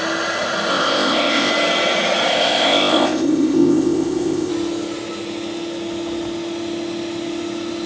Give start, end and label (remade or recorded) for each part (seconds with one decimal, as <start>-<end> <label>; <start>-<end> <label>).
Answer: 0.0-0.7 recorded; 0.7-1.5 remade; 1.5-2.3 recorded; 2.3-4.5 remade; 4.5-7.9 recorded